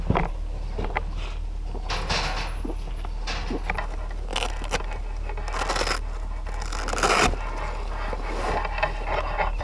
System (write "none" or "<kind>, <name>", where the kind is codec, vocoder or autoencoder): none